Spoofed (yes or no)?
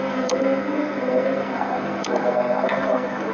yes